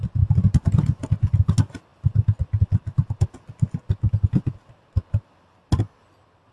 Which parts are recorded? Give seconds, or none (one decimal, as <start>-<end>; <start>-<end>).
0.0-6.5